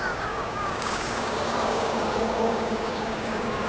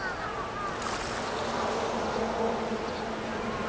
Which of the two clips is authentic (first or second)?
second